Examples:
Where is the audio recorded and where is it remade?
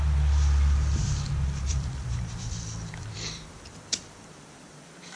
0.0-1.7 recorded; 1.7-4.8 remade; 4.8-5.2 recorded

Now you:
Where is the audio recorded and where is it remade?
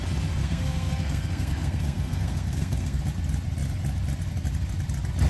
0.0-0.4 recorded; 0.4-3.0 remade; 3.0-5.3 recorded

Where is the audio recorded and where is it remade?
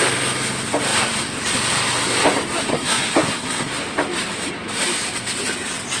0.0-2.7 recorded; 2.7-3.7 remade; 3.7-6.0 recorded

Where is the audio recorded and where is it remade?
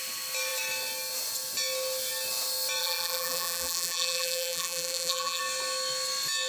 0.0-2.8 recorded; 2.8-5.4 remade; 5.4-6.5 recorded